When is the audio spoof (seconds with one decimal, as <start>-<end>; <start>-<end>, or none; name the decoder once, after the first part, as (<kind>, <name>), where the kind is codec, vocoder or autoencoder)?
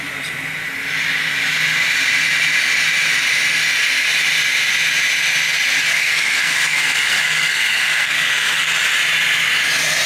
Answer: 5.9-8.7 (codec, SNAC)